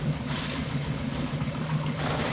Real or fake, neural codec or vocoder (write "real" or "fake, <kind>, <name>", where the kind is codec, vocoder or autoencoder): fake, codec, DAC